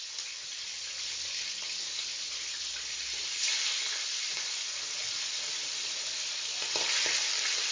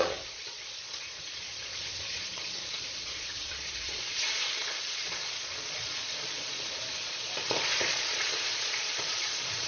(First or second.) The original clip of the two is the first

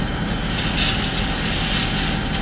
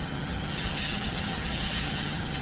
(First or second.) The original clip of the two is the first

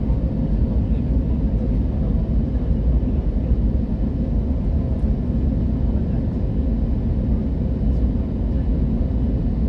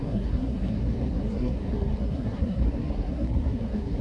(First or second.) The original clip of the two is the first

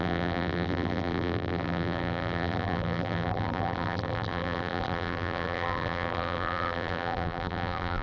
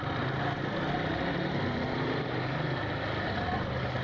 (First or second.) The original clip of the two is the second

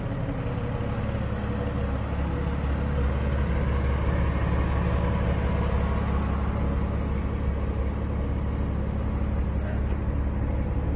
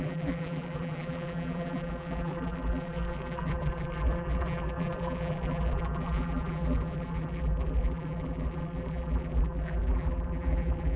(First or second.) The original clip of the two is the first